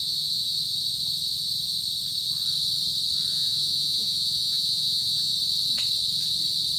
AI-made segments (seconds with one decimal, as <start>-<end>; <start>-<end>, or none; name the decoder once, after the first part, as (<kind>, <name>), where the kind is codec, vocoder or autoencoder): 0.0-0.6 (vocoder, Vocos); 3.3-5.3